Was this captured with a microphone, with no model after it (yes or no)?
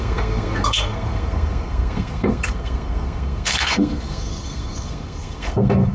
no